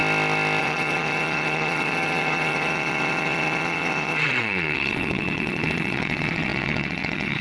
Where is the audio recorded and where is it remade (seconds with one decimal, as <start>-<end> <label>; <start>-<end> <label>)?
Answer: 0.0-0.6 recorded; 0.6-7.4 remade